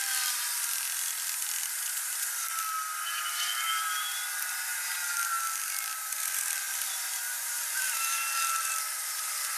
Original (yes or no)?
yes